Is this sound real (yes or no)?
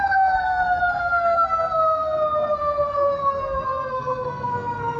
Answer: no